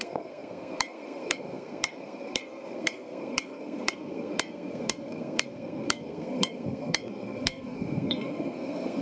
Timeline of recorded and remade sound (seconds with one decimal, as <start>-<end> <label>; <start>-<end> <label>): 0.0-9.0 remade